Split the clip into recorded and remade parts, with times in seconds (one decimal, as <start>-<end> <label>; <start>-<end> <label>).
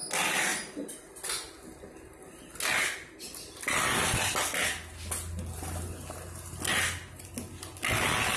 0.0-8.4 recorded